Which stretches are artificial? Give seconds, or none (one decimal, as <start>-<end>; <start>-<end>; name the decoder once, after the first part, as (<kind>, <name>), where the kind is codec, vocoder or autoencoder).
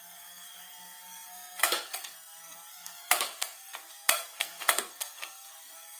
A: 0.0-6.0 (codec, SNAC)